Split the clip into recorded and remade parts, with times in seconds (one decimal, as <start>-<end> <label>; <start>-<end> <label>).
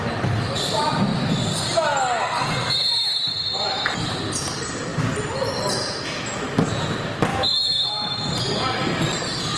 0.0-7.3 recorded; 7.3-8.3 remade; 8.3-9.6 recorded